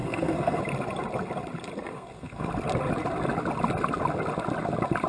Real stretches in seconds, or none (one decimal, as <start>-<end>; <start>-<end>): 0.6-1.9; 2.5-5.1